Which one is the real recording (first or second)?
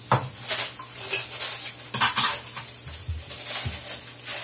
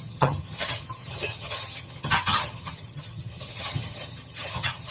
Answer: first